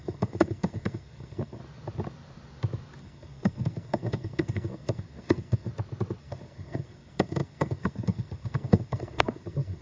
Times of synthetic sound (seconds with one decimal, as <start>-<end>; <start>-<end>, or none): 0.0-1.6; 3.0-5.7; 6.2-9.8